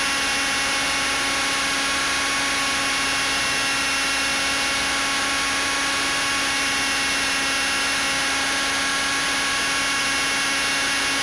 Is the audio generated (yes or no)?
no